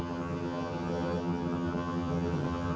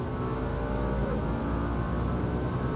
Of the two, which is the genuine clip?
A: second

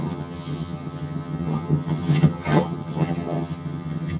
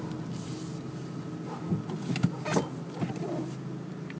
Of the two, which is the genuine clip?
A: second